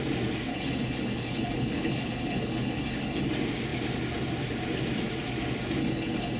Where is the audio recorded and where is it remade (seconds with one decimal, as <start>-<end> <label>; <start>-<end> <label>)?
0.0-0.5 recorded; 0.5-3.3 remade; 3.3-5.8 recorded; 5.8-6.4 remade